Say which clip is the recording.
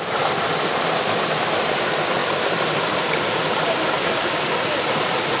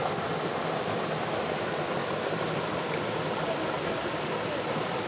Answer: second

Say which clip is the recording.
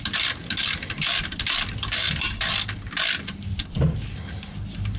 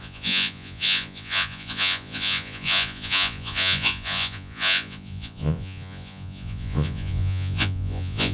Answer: first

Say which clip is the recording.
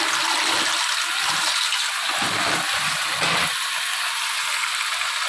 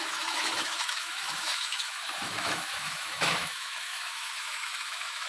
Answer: first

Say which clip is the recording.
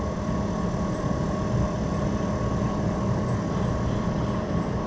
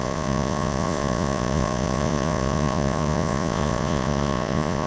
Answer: first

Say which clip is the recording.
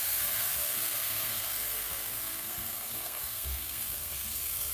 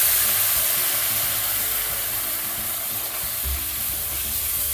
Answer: second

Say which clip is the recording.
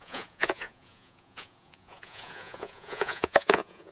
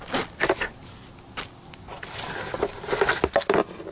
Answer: second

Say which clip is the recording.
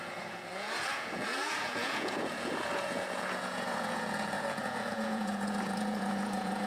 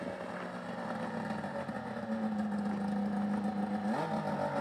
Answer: second